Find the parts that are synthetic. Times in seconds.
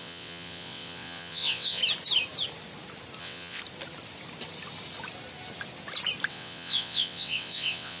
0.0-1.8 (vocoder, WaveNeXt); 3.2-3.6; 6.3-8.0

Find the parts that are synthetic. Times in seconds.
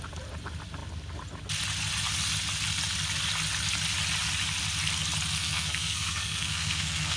5.4-7.2 (codec, SNAC)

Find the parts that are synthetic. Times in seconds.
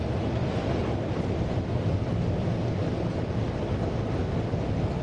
none